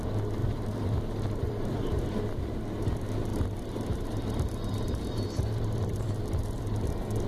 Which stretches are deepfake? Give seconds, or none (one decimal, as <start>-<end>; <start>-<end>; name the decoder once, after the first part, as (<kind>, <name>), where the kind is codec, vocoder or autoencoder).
0.4-2.1 (vocoder, BigVGAN v2); 3.3-6.0